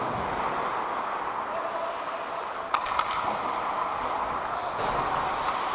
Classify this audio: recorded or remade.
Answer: recorded